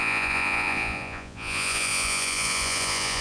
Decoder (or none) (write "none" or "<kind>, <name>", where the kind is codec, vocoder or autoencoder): vocoder, Vocos